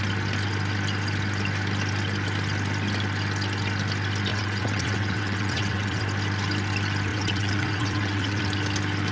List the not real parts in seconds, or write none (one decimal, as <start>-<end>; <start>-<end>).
4.3-6.0; 7.1-8.4